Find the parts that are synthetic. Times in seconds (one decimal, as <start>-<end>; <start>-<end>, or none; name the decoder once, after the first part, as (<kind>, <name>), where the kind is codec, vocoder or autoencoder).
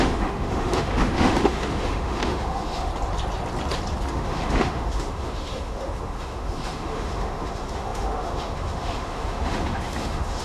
0.0-2.9 (autoencoder, DAC-VAE); 4.1-10.4